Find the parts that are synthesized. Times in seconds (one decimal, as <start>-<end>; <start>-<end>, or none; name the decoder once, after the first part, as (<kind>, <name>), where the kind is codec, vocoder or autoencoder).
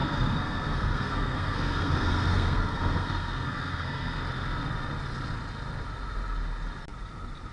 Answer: 0.0-4.2 (codec, SNAC)